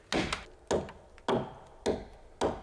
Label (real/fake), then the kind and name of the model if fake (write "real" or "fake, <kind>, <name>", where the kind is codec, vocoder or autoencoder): real